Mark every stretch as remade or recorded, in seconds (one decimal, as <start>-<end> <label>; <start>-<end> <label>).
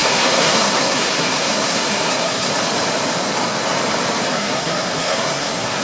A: 0.0-2.5 remade; 2.5-4.3 recorded; 4.3-5.8 remade